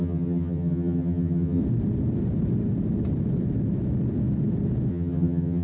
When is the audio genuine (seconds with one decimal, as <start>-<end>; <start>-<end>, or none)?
1.6-4.9